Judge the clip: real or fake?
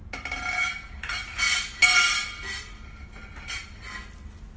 real